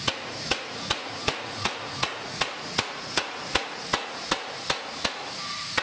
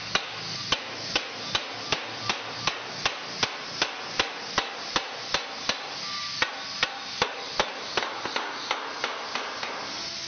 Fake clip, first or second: first